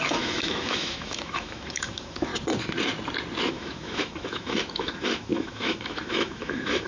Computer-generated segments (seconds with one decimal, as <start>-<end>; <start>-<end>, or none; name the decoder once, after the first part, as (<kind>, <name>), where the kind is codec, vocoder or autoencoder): 0.0-2.3 (autoencoder, DAC-VAE); 3.5-6.9